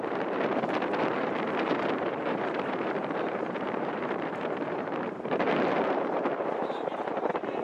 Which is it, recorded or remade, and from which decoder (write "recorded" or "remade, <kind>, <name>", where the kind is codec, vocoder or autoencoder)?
remade, vocoder, BigVGAN v2